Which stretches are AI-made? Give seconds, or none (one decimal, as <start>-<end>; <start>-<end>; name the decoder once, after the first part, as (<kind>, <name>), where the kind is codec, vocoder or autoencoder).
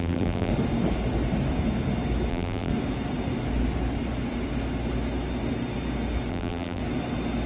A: 0.0-0.5 (vocoder, BigVGAN v2); 2.3-2.7; 6.3-6.8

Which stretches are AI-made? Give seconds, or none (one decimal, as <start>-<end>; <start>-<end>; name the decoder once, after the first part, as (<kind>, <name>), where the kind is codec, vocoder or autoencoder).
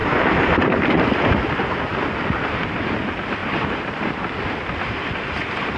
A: 0.0-1.2 (vocoder, BigVGAN v2); 3.4-4.1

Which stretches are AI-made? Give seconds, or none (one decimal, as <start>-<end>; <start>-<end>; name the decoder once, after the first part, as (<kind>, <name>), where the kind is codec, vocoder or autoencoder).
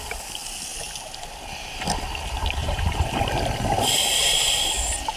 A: 2.6-3.2 (vocoder, BigVGAN v2)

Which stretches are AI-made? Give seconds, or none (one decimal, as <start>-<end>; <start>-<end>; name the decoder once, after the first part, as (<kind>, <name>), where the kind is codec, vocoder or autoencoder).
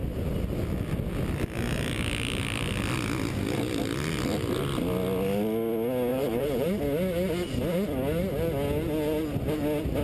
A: 6.1-6.8 (vocoder, BigVGAN v2)